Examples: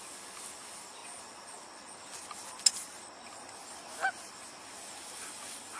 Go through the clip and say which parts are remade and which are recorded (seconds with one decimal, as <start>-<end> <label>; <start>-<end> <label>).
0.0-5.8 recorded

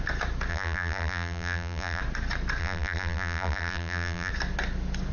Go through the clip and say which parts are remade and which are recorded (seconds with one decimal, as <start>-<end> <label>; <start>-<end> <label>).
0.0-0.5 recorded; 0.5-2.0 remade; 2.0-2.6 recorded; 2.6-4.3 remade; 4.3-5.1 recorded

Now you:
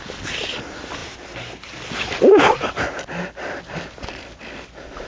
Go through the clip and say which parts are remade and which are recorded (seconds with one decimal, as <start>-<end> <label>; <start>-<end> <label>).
0.0-1.0 recorded; 1.0-3.6 remade; 3.6-5.1 recorded